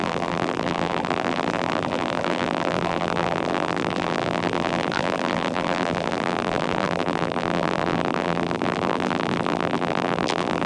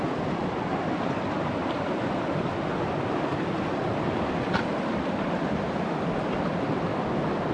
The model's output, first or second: first